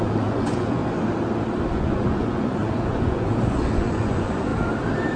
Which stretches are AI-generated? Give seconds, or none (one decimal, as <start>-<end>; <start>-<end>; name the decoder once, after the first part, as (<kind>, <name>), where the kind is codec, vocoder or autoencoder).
0.0-0.8 (vocoder, Vocos); 1.7-4.5

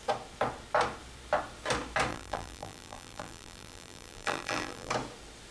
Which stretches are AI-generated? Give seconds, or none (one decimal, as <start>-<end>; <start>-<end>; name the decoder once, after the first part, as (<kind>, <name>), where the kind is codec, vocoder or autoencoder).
2.1-4.9 (vocoder, BigVGAN v2)

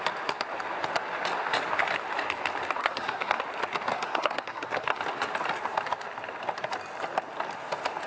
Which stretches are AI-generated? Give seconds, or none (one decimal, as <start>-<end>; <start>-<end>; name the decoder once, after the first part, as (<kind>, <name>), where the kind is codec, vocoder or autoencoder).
2.8-3.4 (codec, SNAC); 3.9-5.0

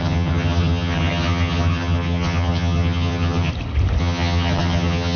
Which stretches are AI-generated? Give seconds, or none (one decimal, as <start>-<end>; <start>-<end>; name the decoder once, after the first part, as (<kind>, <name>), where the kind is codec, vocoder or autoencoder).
0.0-3.5 (vocoder, HiFi-GAN); 4.0-5.2

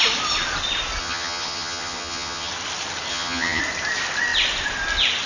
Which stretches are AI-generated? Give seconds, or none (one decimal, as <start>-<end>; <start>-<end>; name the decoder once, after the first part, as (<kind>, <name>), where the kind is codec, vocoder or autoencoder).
1.0-2.5 (vocoder, HiFi-GAN); 3.1-3.6

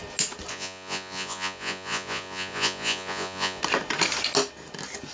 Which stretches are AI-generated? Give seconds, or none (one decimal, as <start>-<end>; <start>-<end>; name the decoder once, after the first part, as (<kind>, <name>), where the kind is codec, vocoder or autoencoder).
0.5-3.6 (vocoder, Vocos)